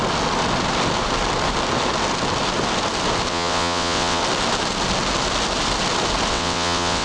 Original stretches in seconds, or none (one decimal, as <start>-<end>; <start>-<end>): 0.0-3.3; 4.2-6.3

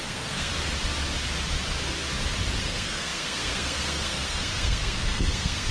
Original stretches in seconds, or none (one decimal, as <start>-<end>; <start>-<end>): 0.5-2.6

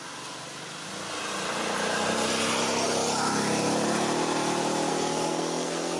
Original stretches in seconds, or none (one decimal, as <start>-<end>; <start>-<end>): 0.0-4.9